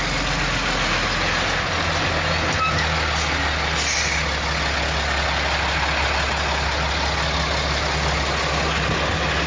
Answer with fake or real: real